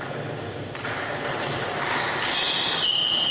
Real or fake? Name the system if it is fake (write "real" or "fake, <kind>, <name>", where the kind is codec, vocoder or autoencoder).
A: real